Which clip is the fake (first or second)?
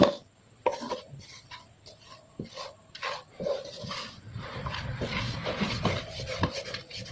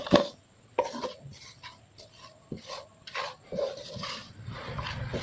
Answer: first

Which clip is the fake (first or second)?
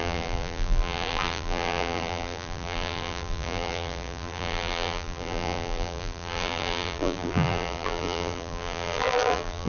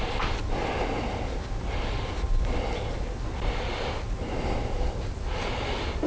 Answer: first